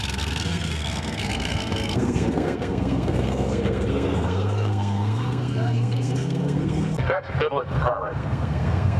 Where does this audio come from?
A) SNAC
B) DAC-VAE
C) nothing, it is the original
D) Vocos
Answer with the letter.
A